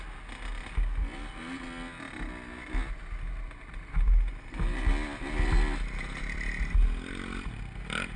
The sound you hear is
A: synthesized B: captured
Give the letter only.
B